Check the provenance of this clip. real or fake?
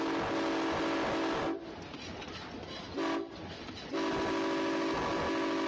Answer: real